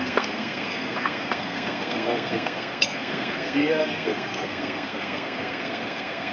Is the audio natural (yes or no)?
no